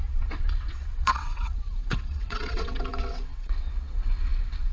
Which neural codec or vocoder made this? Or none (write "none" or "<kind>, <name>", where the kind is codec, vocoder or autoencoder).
vocoder, WaveNeXt